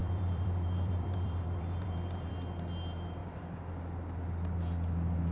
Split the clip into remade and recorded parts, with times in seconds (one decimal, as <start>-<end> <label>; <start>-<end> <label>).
0.0-2.3 remade; 2.3-3.2 recorded; 3.2-3.8 remade; 3.8-5.3 recorded